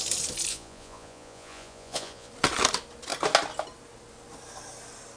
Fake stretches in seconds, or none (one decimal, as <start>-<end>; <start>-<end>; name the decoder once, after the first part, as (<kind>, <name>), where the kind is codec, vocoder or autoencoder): 0.5-2.3 (vocoder, Vocos)